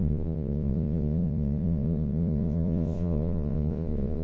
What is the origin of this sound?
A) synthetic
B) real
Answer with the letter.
A